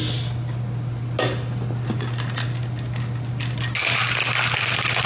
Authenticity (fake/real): real